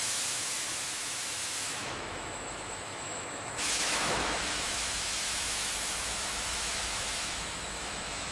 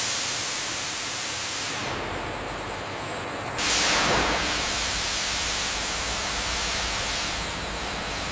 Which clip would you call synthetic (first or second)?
first